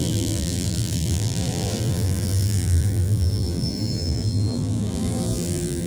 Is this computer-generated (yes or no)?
yes